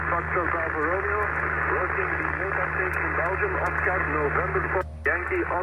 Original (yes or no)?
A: yes